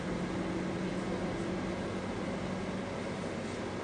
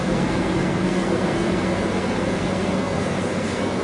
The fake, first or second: second